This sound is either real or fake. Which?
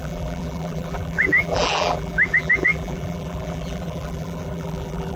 fake